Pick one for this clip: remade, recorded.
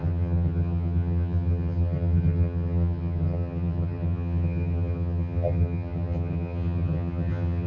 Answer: remade